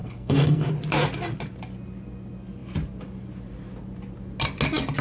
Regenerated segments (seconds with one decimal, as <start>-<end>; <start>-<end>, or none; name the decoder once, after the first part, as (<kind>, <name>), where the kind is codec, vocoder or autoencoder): 0.0-0.7 (codec, SNAC)